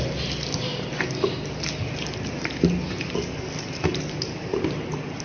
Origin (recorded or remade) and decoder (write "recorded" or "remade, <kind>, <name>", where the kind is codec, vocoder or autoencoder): recorded